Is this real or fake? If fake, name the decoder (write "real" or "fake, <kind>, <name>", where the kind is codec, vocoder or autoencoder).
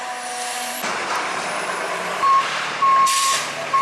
fake, vocoder, BigVGAN v2